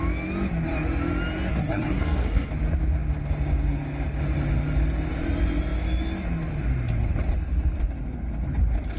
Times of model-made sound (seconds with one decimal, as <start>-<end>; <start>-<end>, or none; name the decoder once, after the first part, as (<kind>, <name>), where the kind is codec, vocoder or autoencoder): 1.5-2.5 (codec, SNAC)